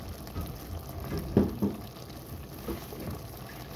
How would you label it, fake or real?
real